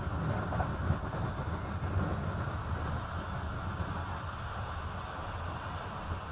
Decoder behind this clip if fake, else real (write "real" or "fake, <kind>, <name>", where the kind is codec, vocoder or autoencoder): real